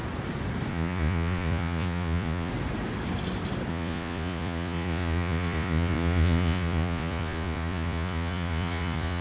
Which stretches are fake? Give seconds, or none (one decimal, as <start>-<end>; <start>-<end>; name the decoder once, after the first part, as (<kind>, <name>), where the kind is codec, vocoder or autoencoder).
0.7-2.5 (vocoder, Vocos); 3.7-9.2